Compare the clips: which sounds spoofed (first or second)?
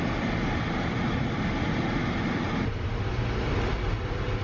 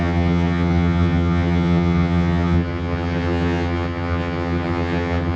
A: second